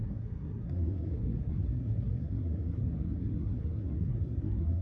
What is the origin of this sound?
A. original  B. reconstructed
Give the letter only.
B